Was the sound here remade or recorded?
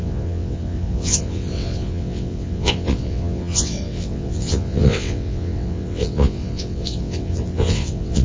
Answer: remade